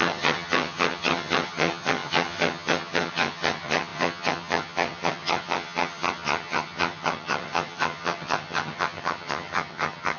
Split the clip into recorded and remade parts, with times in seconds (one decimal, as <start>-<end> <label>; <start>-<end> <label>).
0.0-10.2 remade